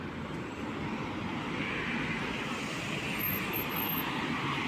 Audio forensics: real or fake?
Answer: real